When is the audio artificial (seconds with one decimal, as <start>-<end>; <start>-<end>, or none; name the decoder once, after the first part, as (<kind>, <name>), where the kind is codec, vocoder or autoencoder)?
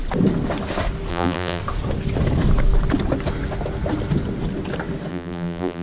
1.1-1.6 (vocoder, BigVGAN v2); 5.1-5.8